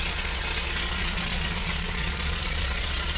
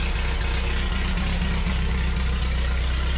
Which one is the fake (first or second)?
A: first